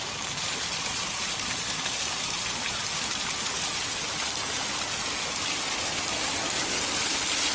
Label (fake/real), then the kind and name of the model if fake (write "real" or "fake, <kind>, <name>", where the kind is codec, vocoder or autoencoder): real